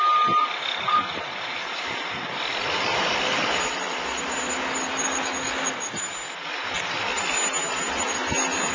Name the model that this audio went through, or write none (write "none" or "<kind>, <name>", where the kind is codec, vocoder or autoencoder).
none